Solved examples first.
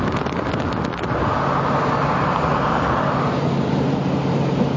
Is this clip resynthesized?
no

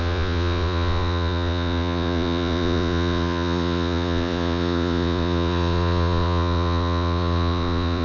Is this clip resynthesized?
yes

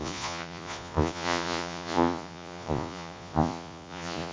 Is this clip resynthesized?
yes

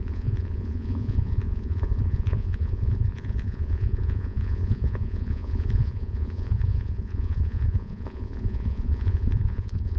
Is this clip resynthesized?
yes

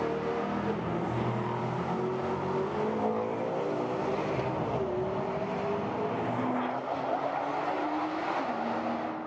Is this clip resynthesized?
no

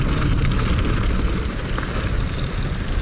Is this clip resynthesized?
no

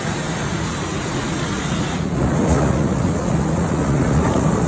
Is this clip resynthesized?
yes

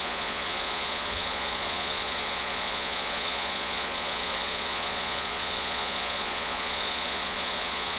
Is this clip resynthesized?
yes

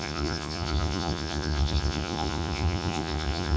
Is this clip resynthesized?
yes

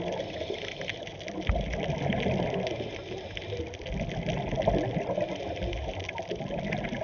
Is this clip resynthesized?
no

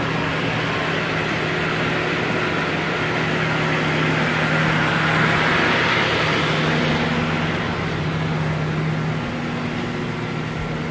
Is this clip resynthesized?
no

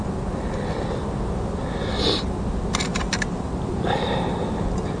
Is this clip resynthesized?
no